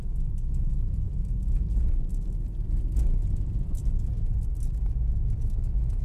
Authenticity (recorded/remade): recorded